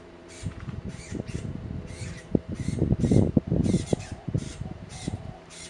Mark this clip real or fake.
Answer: fake